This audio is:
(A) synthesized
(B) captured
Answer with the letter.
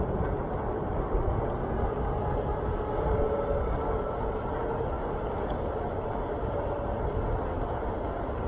B